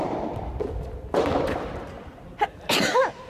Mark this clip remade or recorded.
recorded